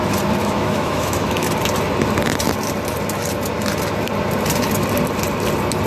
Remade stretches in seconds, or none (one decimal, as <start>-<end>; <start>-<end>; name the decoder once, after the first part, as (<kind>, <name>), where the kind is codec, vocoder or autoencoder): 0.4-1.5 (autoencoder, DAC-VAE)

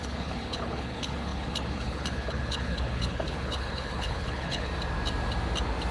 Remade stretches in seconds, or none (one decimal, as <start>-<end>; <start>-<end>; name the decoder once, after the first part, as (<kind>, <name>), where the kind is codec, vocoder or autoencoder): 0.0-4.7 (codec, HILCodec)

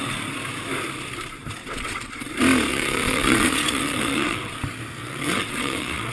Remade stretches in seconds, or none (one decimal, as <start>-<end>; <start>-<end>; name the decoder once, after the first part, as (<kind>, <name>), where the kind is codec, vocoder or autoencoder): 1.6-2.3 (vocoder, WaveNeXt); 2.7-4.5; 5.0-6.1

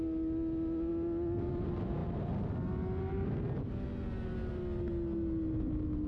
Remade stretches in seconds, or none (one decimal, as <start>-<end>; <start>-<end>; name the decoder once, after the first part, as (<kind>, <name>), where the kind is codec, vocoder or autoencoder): none

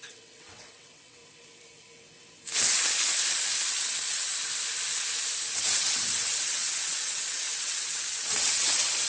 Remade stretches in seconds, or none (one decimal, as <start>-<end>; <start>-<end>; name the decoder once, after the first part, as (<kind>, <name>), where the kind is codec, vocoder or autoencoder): 0.0-1.2 (vocoder, WaveNeXt); 3.7-4.3; 5.6-9.1